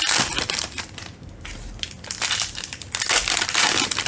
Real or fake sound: fake